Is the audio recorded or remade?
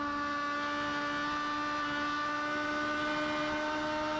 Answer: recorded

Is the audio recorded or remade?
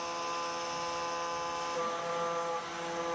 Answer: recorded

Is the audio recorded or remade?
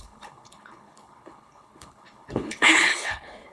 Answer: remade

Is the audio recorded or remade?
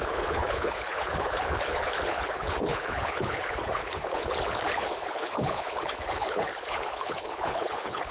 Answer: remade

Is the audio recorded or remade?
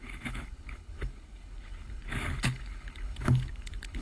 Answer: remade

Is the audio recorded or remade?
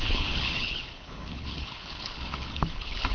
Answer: remade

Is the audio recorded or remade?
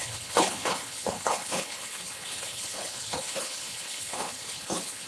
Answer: remade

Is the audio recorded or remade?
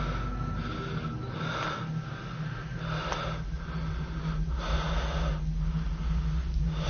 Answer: recorded